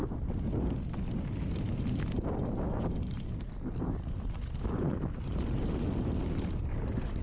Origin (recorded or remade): recorded